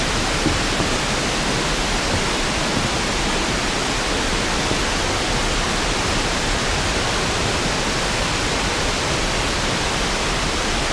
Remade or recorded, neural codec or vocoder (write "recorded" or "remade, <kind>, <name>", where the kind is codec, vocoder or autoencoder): recorded